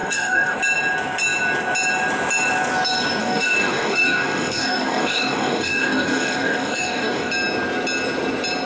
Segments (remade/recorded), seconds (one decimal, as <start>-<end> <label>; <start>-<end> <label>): 0.0-0.6 remade; 0.6-3.2 recorded; 3.2-7.3 remade; 7.3-8.7 recorded

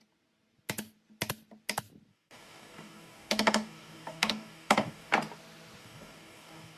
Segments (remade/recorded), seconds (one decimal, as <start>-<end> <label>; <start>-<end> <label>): 0.0-2.1 recorded; 2.1-5.1 remade; 5.1-5.8 recorded; 5.8-6.8 remade

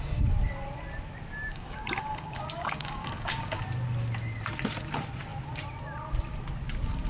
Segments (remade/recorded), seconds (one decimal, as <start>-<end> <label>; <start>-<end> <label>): 0.0-1.5 recorded; 1.5-3.6 remade; 3.6-7.1 recorded

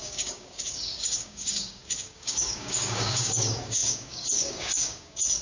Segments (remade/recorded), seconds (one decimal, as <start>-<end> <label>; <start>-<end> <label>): 0.0-5.4 remade